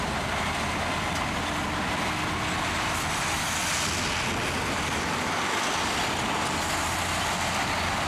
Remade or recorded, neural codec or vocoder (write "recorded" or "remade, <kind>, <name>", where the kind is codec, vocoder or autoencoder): recorded